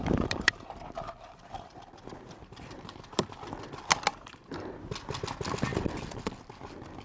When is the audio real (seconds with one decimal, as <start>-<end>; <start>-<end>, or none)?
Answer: 3.3-4.1; 4.8-7.0